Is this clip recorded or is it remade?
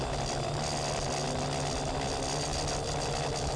recorded